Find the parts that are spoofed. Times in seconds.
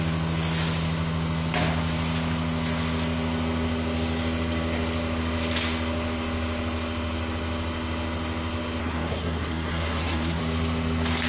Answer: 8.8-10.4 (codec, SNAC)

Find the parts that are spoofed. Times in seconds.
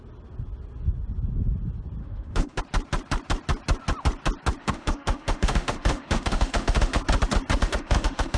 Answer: 2.0-2.6 (autoencoder, DAC-VAE); 4.6-7.0; 7.6-8.4